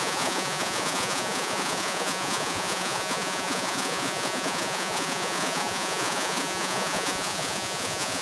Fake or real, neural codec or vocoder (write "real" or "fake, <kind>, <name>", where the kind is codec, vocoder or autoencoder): fake, vocoder, Vocos